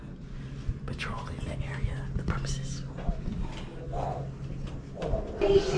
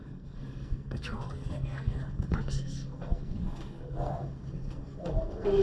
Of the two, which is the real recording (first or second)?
first